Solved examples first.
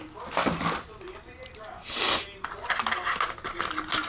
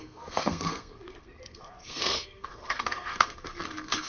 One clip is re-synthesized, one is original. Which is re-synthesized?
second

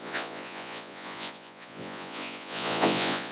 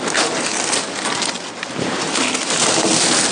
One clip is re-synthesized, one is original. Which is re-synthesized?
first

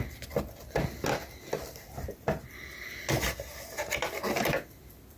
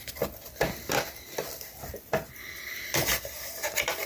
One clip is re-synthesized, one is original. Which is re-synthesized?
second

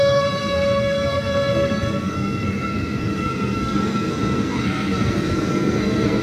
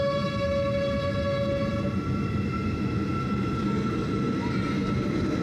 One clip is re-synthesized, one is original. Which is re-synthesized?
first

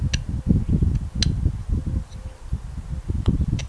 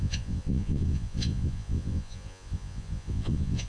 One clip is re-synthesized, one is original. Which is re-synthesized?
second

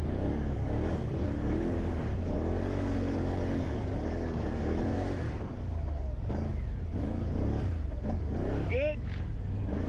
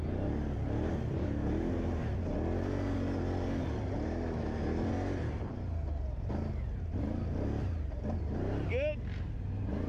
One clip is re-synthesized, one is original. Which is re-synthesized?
first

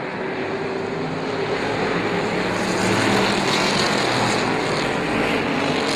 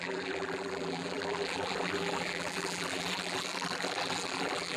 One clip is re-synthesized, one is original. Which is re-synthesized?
second